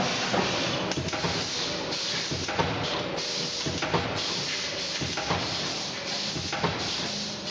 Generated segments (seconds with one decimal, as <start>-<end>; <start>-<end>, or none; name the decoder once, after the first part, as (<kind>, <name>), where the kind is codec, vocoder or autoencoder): 6.7-7.5 (vocoder, BigVGAN v2)